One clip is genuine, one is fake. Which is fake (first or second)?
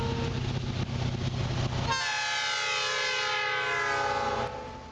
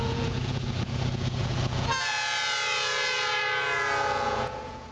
second